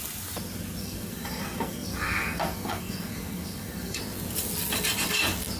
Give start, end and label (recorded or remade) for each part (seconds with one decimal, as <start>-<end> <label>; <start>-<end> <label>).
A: 0.0-0.8 recorded; 0.8-4.0 remade; 4.0-5.6 recorded